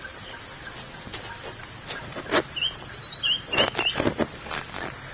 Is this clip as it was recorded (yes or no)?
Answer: yes